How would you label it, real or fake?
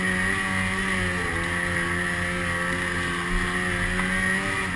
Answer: real